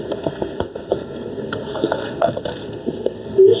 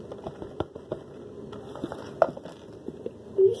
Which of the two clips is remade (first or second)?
first